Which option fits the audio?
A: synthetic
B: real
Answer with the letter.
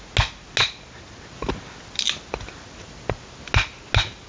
B